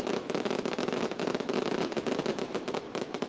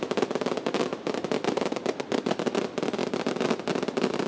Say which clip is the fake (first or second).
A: first